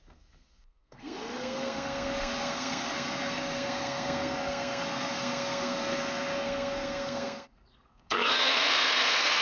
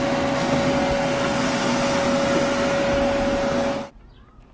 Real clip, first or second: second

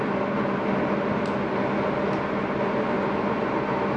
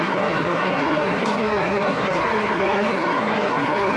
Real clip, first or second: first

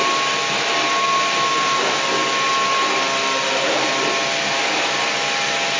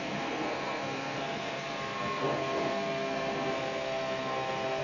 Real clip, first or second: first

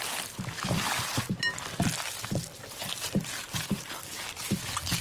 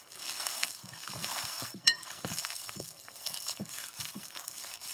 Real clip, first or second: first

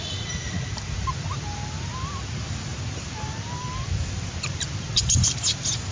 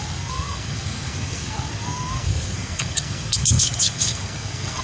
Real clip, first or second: first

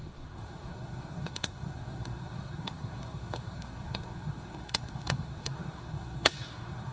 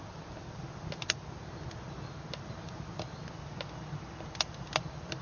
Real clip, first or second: second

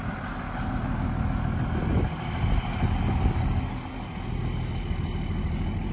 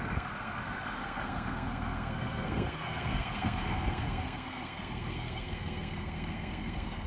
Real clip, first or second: first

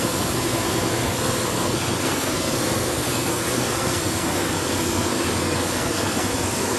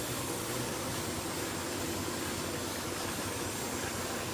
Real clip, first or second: second